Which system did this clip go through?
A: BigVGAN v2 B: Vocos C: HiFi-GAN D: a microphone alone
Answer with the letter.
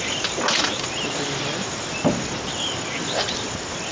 D